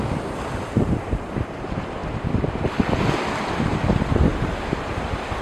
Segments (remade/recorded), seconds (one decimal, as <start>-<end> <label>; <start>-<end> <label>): 0.0-5.4 recorded